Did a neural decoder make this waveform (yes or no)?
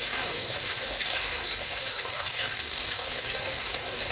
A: yes